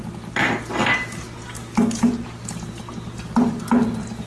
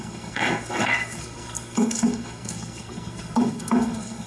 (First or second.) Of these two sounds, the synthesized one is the second